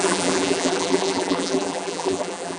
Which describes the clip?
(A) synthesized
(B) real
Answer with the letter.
A